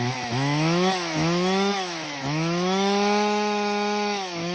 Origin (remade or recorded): remade